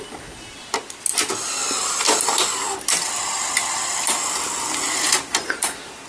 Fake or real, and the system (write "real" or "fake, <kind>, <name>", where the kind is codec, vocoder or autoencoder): real